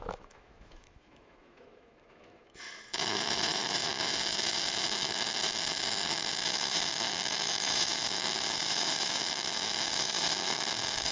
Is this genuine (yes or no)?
no